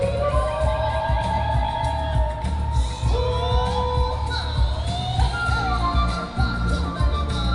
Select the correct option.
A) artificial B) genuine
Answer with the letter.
B